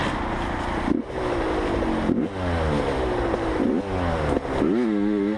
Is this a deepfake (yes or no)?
no